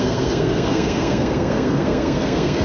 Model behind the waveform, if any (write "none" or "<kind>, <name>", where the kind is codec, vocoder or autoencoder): codec, SNAC